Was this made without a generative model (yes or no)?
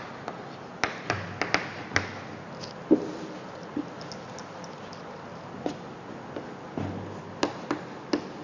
yes